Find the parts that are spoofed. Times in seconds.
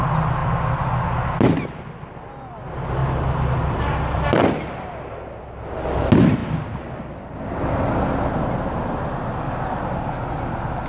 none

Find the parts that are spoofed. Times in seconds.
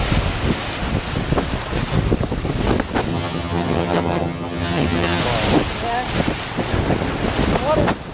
3.1-5.2 (vocoder, HiFi-GAN)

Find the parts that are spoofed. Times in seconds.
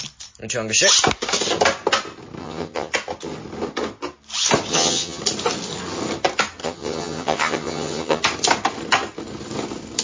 2.4-2.9 (vocoder, HiFi-GAN); 4.7-5.2; 6.6-8.2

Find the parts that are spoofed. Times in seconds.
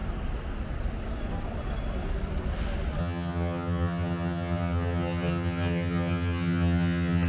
3.0-7.3 (vocoder, HiFi-GAN)